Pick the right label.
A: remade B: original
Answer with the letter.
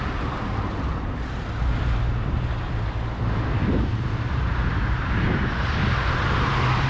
A